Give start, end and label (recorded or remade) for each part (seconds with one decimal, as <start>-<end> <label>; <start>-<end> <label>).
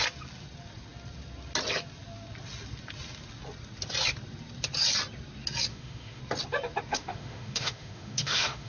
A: 0.0-5.7 recorded; 5.7-6.2 remade; 6.2-6.9 recorded; 6.9-8.7 remade